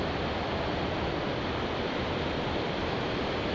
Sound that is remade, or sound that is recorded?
remade